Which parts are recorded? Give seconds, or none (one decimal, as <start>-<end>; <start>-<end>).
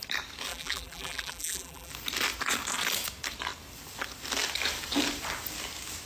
0.0-0.5; 1.9-6.1